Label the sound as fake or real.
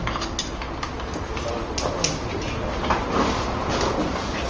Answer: real